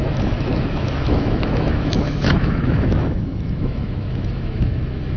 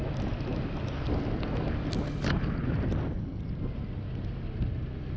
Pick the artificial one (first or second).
first